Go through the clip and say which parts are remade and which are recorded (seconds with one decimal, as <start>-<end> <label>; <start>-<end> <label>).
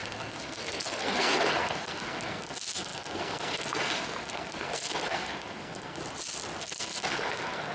0.0-6.0 remade; 6.0-6.6 recorded; 6.6-7.7 remade